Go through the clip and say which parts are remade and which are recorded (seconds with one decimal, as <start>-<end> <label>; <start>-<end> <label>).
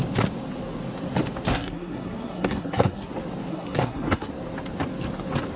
0.0-1.5 recorded; 1.5-3.1 remade; 3.1-3.5 recorded; 3.5-4.3 remade; 4.3-5.6 recorded